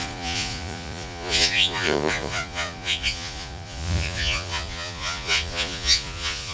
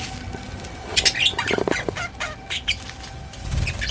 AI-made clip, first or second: first